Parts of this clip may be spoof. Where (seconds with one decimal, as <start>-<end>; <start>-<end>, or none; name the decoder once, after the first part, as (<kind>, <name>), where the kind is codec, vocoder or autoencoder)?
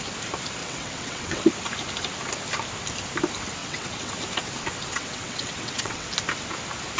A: 0.6-1.5 (vocoder, WaveNeXt); 3.6-4.1; 4.9-6.1